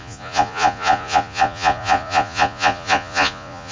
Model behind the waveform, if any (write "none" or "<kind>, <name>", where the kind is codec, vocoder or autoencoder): vocoder, Vocos